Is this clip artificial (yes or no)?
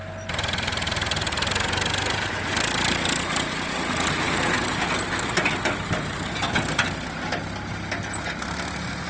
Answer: no